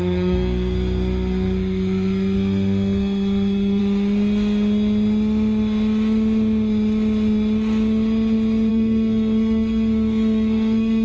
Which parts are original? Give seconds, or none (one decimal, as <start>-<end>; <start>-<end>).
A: 3.8-8.7